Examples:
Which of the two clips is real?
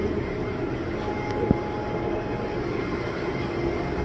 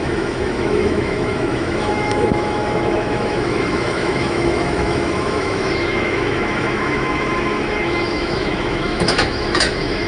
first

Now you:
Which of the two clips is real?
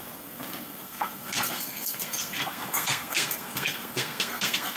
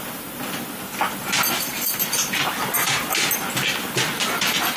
second